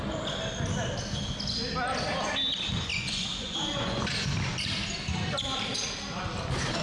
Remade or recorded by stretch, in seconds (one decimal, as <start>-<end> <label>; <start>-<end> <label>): 0.0-2.9 recorded; 2.9-4.0 remade; 4.0-6.8 recorded